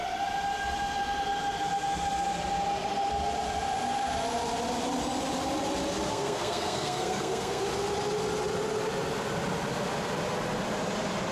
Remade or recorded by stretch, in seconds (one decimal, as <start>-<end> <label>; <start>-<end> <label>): 0.0-6.1 recorded; 6.1-7.6 remade; 7.6-11.3 recorded